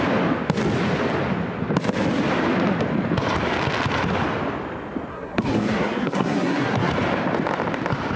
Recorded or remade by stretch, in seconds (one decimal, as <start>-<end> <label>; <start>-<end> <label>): 0.0-5.1 recorded; 5.1-6.9 remade; 6.9-8.2 recorded

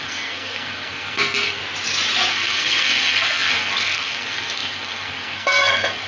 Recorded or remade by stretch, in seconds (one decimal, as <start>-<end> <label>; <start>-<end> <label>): 0.0-1.6 remade; 1.6-2.3 recorded; 2.3-6.1 remade

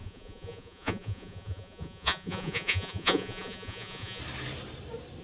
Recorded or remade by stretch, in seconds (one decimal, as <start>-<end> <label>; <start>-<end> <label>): 0.0-4.2 remade; 4.2-5.2 recorded

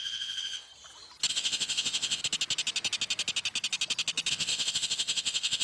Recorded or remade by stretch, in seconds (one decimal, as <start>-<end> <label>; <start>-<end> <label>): 0.0-0.7 remade; 0.7-1.3 recorded; 1.3-2.2 remade; 2.2-4.3 recorded; 4.3-5.6 remade